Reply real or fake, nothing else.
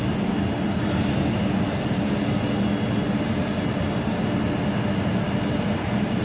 real